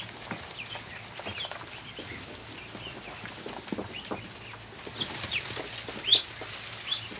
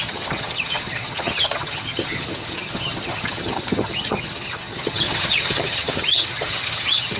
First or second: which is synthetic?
second